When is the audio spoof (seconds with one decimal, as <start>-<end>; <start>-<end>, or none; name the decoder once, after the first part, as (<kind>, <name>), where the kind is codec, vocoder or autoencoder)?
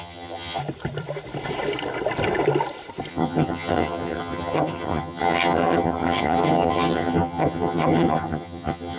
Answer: 0.0-0.6 (vocoder, HiFi-GAN); 3.1-9.0